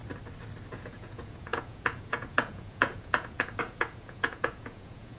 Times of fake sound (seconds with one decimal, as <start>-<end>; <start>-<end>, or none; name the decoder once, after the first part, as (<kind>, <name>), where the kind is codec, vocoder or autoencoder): 0.8-5.2 (vocoder, Vocos)